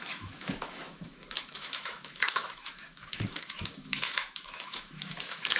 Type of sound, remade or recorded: remade